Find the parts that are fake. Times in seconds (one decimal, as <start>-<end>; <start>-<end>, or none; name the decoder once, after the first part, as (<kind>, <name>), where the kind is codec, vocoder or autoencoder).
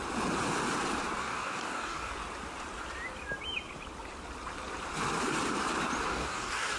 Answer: 1.2-2.1 (codec, DAC); 6.1-6.8